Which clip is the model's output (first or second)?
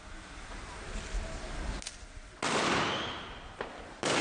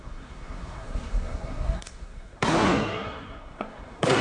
second